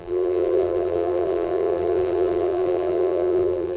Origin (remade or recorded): remade